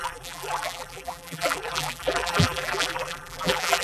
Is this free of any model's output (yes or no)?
no